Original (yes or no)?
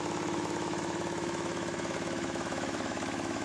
no